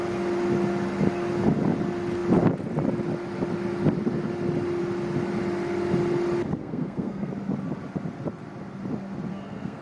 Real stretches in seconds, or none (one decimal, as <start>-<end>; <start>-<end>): 0.0-6.6; 7.3-9.3